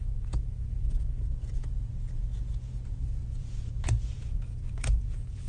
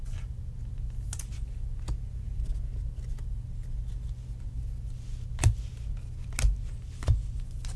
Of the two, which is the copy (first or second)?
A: first